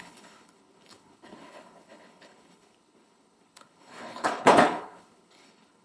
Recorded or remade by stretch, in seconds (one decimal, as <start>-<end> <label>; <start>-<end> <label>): 0.0-5.8 remade